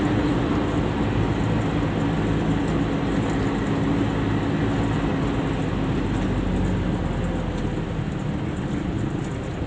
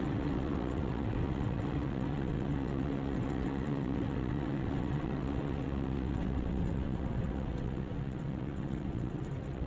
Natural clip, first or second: first